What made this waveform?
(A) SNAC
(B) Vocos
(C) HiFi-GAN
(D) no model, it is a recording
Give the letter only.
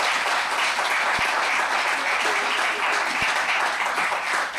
D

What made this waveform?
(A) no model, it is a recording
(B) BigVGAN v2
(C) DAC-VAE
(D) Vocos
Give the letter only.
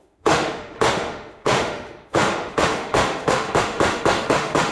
C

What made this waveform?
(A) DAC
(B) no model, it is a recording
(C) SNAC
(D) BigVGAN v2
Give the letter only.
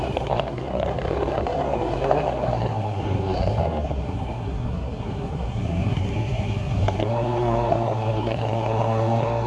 C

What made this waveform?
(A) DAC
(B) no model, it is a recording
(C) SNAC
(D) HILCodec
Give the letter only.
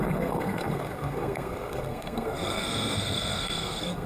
C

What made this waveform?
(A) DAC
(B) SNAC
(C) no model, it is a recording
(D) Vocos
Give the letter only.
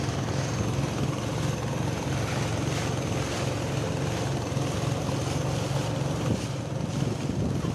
C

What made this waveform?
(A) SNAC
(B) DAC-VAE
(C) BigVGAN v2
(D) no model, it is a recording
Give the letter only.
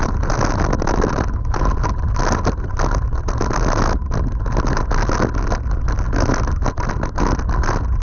D